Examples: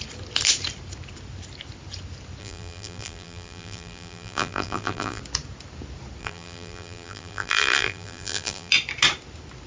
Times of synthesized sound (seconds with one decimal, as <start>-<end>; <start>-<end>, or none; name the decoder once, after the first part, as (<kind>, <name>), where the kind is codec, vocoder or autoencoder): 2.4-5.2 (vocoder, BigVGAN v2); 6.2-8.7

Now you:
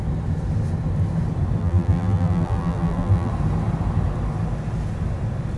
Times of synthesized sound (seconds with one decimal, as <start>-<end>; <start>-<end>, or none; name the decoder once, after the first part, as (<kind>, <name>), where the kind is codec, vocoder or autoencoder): 1.6-3.3 (vocoder, BigVGAN v2)

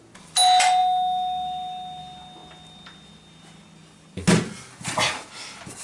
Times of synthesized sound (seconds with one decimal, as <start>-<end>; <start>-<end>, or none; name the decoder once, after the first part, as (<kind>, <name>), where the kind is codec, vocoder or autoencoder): none

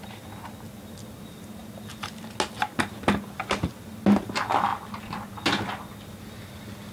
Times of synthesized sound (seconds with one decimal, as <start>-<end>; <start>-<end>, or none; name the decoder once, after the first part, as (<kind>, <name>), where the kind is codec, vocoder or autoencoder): none